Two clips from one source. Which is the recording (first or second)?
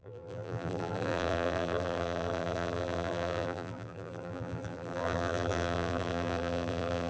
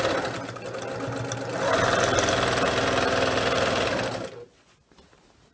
second